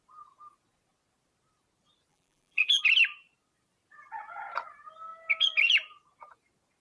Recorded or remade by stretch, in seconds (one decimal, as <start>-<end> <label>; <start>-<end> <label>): 0.0-2.1 recorded; 2.1-2.8 remade; 2.8-6.8 recorded